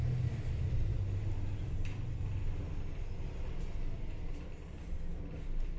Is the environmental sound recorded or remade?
recorded